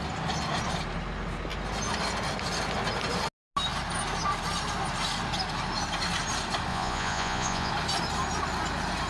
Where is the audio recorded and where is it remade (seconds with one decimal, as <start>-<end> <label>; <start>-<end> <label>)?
0.0-6.7 recorded; 6.7-7.7 remade; 7.7-9.1 recorded